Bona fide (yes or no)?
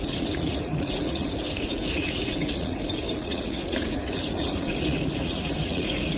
no